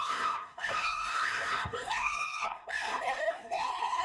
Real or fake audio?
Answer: fake